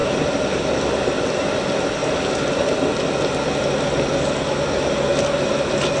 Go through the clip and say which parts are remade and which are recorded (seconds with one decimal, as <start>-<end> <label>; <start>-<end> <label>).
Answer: 0.0-0.7 remade; 0.7-2.0 recorded; 2.0-2.6 remade; 2.6-6.0 recorded